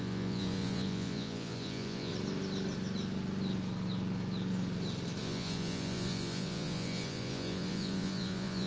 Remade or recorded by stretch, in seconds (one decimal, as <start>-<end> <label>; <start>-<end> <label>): 0.0-2.1 remade; 2.1-5.2 recorded; 5.2-8.7 remade